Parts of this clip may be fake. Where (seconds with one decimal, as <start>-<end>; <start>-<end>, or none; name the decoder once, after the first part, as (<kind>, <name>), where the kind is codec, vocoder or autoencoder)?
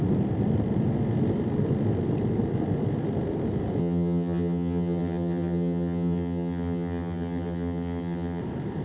3.8-8.4 (vocoder, HiFi-GAN)